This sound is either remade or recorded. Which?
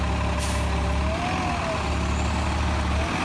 recorded